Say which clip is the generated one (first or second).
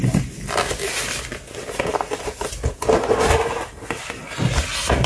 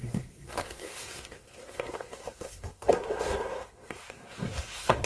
second